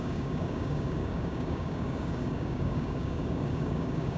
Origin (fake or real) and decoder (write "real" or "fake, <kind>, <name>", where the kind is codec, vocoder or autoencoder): fake, codec, DAC